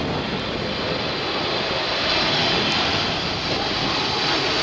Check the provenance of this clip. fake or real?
real